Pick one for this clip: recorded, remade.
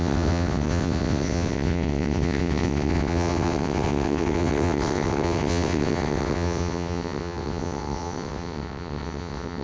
remade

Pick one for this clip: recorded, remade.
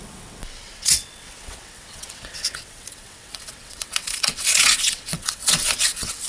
remade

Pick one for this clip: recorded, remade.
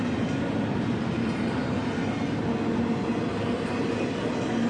recorded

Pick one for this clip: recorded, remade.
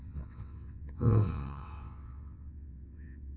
remade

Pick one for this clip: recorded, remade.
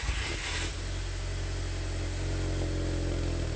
recorded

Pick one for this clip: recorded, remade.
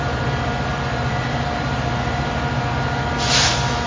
recorded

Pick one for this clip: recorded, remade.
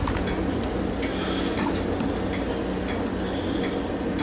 recorded